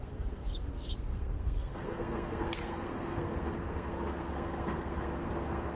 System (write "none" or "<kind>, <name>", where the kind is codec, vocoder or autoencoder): codec, SNAC